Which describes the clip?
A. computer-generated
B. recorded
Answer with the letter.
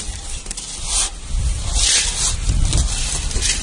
B